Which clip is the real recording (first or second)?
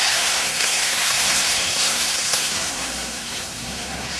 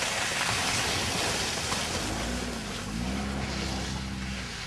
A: second